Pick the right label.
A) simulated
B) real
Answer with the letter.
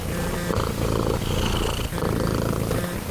B